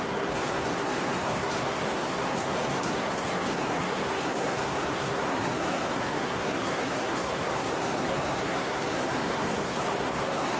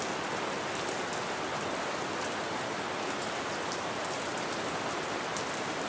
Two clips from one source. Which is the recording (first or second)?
second